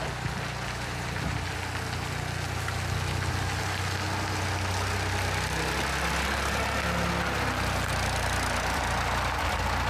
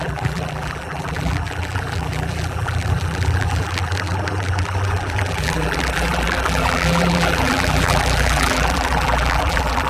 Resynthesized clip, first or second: second